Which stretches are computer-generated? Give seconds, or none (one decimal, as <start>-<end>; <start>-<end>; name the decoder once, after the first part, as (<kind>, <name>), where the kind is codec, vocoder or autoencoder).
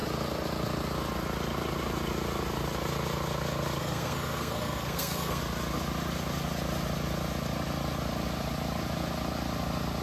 3.8-5.4 (codec, SNAC)